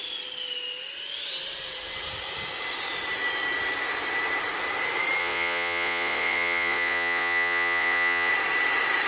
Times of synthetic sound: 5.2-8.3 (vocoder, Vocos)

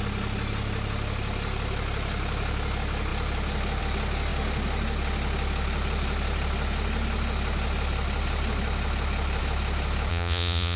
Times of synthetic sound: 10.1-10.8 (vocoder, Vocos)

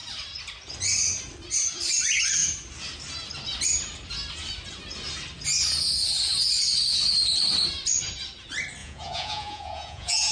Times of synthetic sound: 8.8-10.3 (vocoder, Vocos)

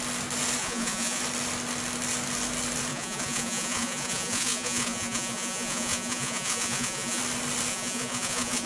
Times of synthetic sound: 0.6-1.2 (vocoder, Vocos); 2.9-7.2; 7.7-8.7

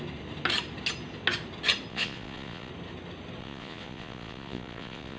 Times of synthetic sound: 1.9-2.7 (vocoder, Vocos); 3.4-5.2

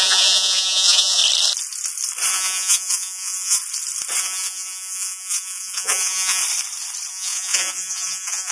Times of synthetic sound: 0.0-1.2 (vocoder, Vocos); 2.3-3.6; 4.2-6.4; 7.1-8.5